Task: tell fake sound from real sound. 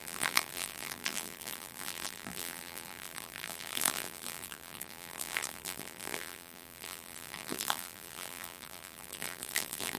fake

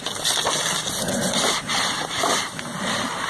real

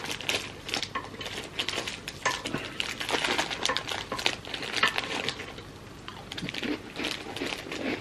real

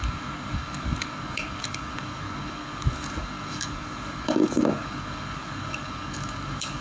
fake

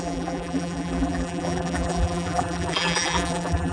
fake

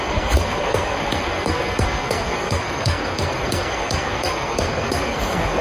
fake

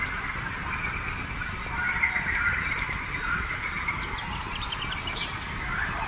fake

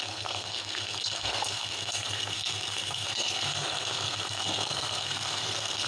fake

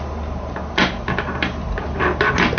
real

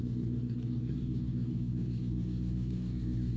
fake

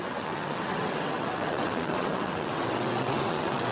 fake